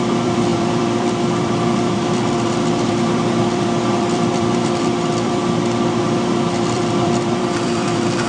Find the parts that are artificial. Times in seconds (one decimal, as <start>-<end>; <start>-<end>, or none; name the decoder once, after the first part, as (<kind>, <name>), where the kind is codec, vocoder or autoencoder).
0.0-5.4 (vocoder, BigVGAN v2); 6.0-8.3